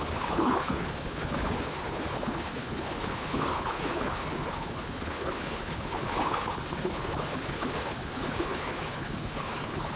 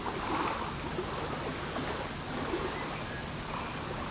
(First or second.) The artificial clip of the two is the first